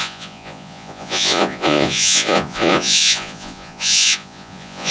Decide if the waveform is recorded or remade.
remade